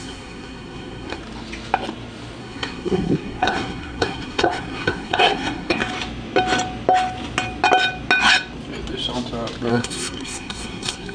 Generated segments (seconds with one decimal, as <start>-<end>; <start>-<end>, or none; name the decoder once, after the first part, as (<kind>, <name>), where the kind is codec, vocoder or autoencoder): 0.0-1.2 (codec, SNAC); 2.4-5.8; 9.7-11.1